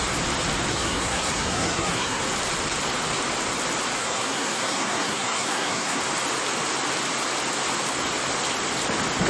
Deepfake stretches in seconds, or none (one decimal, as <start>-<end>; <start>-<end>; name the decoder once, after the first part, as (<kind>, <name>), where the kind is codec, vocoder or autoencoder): 0.7-2.2 (codec, SNAC); 4.0-6.0